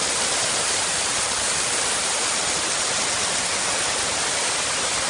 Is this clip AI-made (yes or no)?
no